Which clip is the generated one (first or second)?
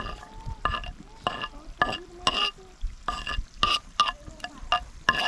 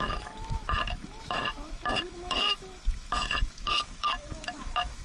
second